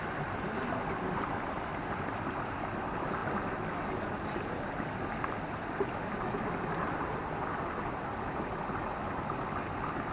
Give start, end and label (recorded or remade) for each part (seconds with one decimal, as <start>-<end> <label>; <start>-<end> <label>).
0.0-10.1 recorded